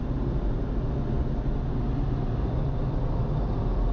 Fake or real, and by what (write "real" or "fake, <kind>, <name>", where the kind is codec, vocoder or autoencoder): real